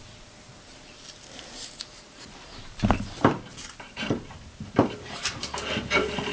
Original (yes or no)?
no